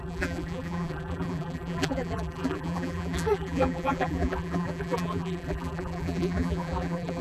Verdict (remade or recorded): remade